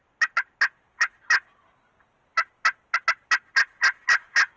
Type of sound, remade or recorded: recorded